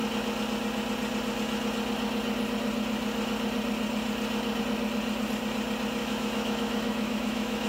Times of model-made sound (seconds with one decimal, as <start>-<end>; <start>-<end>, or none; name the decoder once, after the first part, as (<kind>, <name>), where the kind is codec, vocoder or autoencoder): 6.0-7.7 (autoencoder, DAC-VAE)